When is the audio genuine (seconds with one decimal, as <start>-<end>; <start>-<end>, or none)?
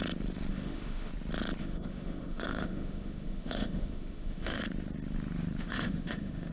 0.0-0.5; 1.1-1.6; 4.6-5.6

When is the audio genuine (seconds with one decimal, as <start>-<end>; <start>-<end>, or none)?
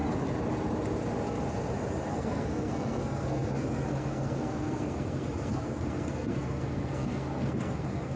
0.0-2.1